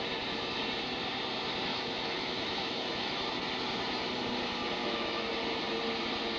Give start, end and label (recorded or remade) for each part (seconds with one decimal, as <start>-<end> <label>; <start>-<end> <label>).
0.0-1.7 recorded; 1.7-3.3 remade; 3.3-4.8 recorded; 4.8-5.3 remade; 5.3-6.4 recorded